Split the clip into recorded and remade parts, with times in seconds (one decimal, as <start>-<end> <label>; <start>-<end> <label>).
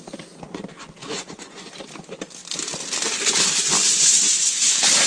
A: 0.0-1.0 recorded; 1.0-1.7 remade; 1.7-5.1 recorded